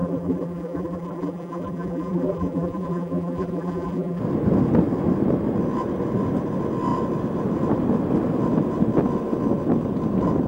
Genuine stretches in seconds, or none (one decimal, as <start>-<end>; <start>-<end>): 4.2-10.5